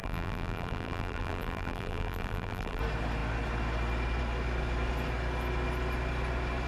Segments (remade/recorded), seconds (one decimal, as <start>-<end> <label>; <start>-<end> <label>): 0.0-2.8 remade; 2.8-6.7 recorded